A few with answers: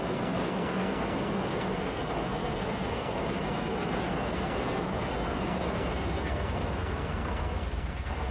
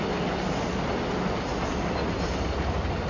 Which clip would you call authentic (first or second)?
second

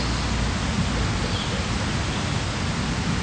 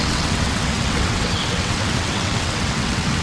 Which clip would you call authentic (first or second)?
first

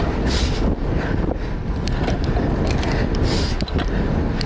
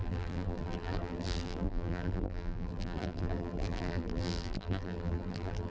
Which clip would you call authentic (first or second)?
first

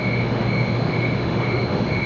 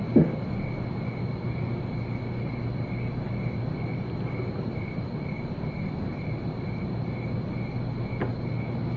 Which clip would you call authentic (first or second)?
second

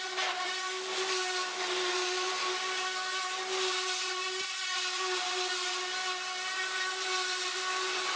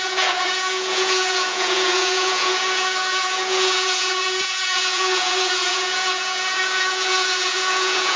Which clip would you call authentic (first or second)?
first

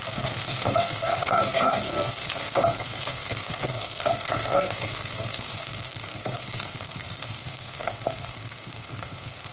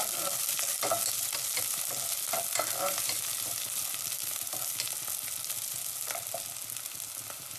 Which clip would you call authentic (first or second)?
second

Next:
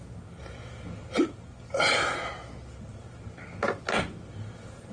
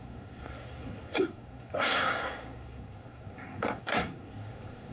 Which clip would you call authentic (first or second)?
first